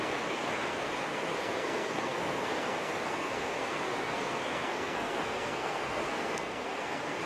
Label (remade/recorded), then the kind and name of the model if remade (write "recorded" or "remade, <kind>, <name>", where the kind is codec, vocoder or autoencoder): remade, codec, SNAC